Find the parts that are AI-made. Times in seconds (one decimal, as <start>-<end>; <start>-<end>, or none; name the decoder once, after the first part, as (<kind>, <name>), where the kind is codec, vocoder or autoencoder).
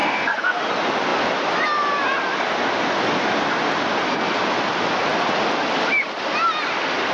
0.0-0.6 (codec, SNAC)